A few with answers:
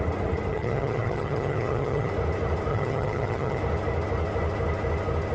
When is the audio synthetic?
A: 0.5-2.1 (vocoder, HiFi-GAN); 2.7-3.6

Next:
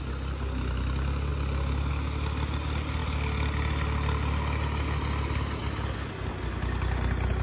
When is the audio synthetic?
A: none

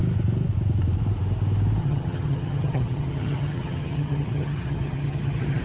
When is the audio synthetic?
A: 1.8-5.6 (vocoder, HiFi-GAN)

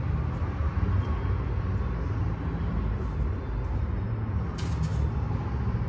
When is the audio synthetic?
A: none